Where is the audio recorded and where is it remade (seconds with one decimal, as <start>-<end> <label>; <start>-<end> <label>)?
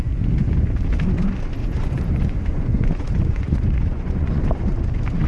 0.0-1.6 recorded; 1.6-4.4 remade; 4.4-5.3 recorded